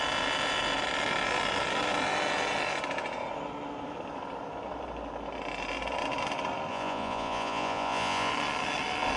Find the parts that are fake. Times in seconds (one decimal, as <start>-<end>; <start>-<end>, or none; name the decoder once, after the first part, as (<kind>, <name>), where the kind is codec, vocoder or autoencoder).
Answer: 6.7-8.3 (vocoder, Vocos)